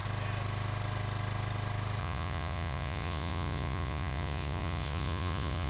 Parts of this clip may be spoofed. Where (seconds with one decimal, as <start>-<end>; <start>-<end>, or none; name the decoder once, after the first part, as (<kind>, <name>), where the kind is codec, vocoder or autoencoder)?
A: 2.0-5.7 (vocoder, Vocos)